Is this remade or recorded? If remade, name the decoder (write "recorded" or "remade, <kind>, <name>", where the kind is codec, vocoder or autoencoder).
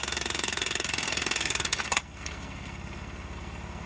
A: remade, codec, SNAC